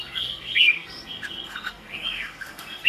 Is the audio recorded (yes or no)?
no